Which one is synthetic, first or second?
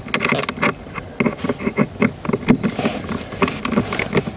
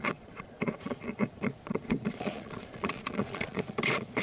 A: second